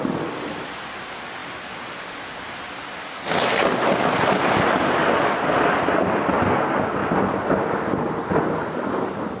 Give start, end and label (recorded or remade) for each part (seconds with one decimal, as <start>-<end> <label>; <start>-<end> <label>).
0.0-9.4 recorded